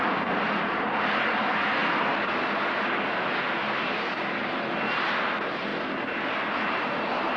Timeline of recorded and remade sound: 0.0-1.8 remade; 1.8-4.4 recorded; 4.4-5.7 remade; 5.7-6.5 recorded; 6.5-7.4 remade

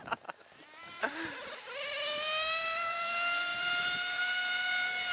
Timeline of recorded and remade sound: 0.0-0.8 recorded; 0.8-3.1 remade; 3.1-3.5 recorded; 3.5-4.3 remade; 4.3-5.1 recorded

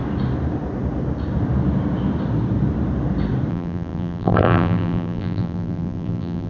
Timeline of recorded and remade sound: 0.0-3.5 recorded; 3.5-6.5 remade

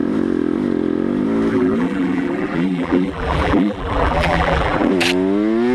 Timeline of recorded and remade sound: 0.0-1.5 recorded; 1.5-4.9 remade; 4.9-5.7 recorded

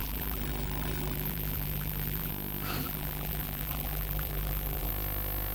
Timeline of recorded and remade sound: 0.0-2.3 remade; 2.3-2.8 recorded; 2.8-4.9 remade; 4.9-5.5 recorded

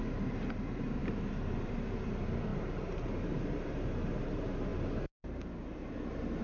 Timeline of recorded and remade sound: 0.0-4.7 remade; 4.7-6.4 recorded

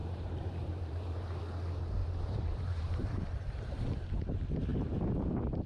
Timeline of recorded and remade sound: 0.0-1.4 remade; 1.4-2.0 recorded; 2.0-4.1 remade; 4.1-4.7 recorded; 4.7-5.7 remade

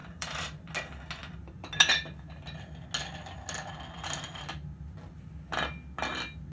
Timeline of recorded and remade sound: 0.0-0.7 remade; 0.7-6.5 recorded